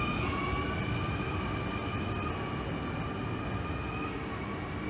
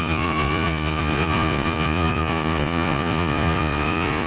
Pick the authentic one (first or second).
first